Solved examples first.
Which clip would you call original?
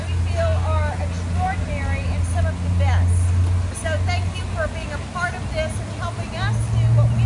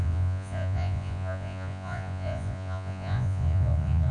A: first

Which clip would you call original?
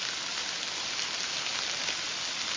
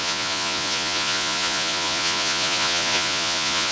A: first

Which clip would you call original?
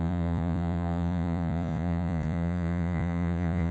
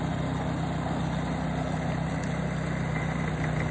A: second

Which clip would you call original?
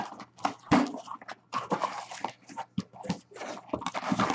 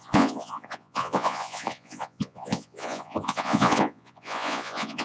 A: first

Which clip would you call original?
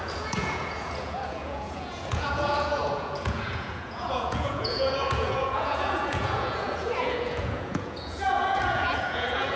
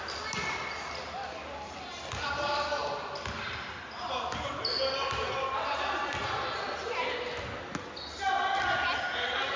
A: second